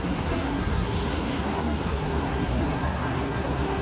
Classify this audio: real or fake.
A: fake